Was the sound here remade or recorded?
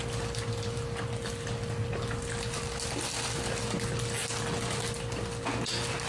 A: recorded